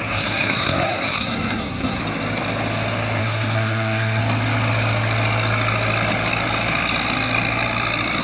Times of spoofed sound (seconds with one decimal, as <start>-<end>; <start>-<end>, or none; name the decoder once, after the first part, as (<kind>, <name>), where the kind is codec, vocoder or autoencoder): 0.0-2.0 (codec, SNAC); 3.2-4.2